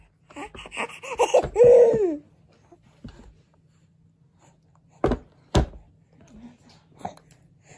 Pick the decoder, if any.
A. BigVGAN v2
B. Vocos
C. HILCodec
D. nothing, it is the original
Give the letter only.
D